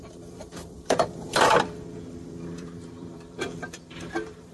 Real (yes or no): no